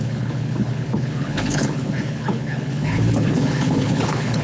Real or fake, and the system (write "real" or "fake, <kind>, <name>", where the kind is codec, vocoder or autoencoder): fake, codec, HILCodec